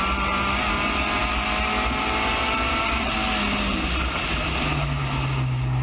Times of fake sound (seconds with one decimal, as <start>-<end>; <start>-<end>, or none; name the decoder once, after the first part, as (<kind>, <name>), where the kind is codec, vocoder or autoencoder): none